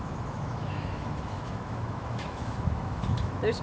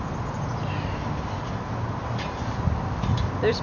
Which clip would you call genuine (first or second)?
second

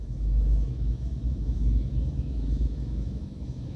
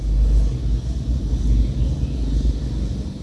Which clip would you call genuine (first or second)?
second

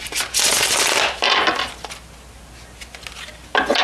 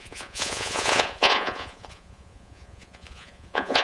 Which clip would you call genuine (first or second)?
first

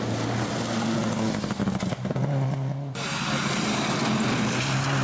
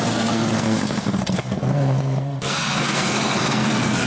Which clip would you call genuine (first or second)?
first